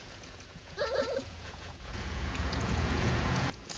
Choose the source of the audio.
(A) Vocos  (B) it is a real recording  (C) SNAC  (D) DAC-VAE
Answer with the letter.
A